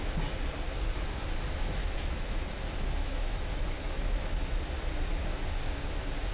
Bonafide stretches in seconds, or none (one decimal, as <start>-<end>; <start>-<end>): 0.0-1.8; 4.6-6.3